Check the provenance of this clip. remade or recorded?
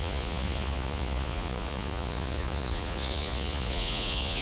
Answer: remade